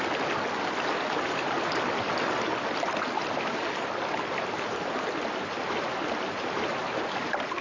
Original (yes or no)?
yes